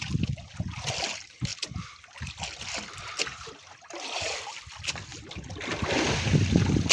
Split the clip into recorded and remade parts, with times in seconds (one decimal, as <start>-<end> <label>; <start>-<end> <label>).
0.0-5.1 recorded; 5.1-5.8 remade; 5.8-6.9 recorded